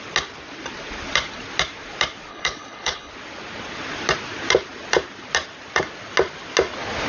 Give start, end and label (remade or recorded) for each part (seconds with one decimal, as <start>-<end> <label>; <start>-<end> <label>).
0.0-2.3 recorded; 2.3-3.1 remade; 3.1-7.1 recorded